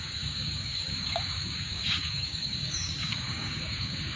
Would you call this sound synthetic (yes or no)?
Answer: yes